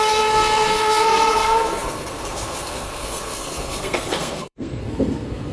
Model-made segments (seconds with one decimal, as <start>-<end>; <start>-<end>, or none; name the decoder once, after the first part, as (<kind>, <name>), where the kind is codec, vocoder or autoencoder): 0.0-5.5 (codec, SNAC)